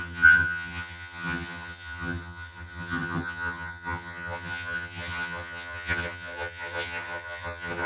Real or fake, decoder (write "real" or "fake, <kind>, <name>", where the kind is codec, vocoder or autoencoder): fake, vocoder, HiFi-GAN